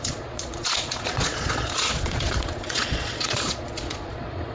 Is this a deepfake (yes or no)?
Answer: yes